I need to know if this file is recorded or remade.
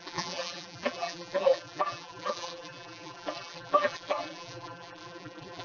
remade